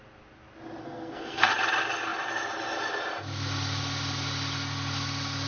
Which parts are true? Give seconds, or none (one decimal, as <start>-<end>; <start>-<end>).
0.0-0.8; 1.5-5.5